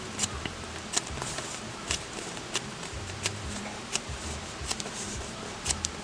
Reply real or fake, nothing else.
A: fake